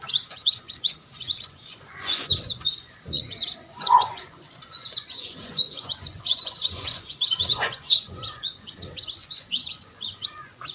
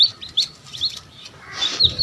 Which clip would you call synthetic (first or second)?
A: first